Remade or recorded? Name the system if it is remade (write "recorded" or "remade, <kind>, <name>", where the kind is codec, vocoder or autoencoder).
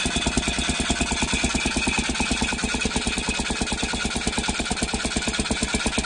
recorded